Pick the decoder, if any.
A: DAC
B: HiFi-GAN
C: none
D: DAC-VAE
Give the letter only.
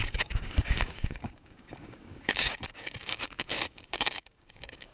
A